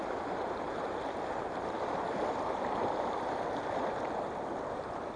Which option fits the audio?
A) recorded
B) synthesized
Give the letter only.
A